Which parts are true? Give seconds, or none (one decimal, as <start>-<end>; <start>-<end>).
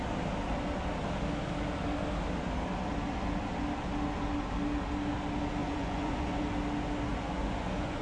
0.0-5.6; 6.4-7.1